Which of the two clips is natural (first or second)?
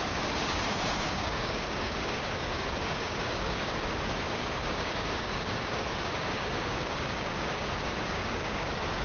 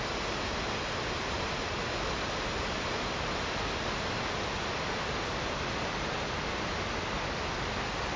second